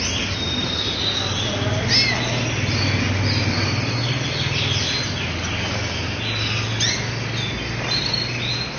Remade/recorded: recorded